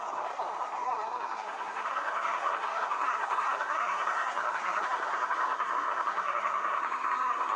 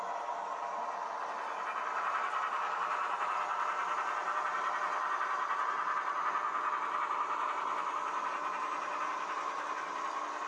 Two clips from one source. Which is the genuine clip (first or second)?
second